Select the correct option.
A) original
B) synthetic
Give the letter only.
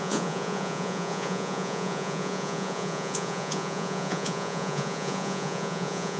B